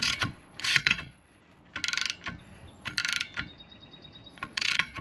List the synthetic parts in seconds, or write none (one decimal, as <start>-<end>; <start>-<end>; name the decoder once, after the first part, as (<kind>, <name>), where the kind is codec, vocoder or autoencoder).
0.0-1.4 (vocoder, Vocos); 2.4-3.0; 4.3-5.0